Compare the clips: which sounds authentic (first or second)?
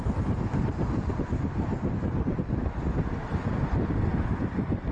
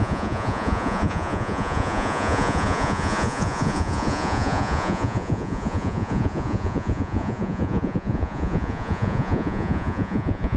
first